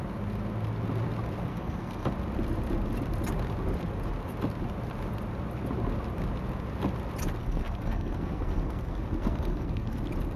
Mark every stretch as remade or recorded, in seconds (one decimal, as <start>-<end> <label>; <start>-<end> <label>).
0.0-1.5 recorded; 1.5-2.1 remade; 2.1-7.4 recorded; 7.4-10.0 remade; 10.0-10.4 recorded